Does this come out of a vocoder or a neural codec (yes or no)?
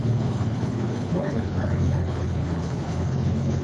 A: yes